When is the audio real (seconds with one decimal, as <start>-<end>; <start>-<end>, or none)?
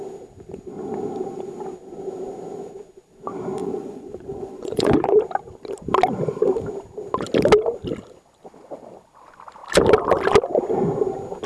0.0-3.6; 5.2-11.5